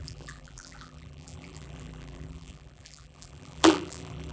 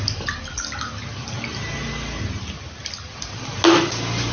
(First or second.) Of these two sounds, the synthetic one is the first